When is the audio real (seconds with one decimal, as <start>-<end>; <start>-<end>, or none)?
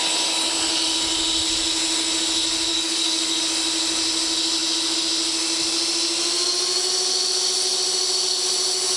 0.0-2.7; 3.4-9.0